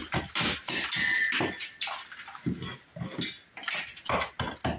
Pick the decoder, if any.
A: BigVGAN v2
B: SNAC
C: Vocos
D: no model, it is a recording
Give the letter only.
D